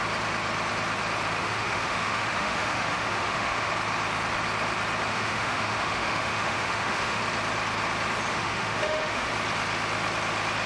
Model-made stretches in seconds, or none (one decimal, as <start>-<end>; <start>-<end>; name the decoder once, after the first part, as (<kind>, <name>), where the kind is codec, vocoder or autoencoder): 1.4-3.7 (autoencoder, DAC-VAE); 5.1-7.2; 8.3-9.3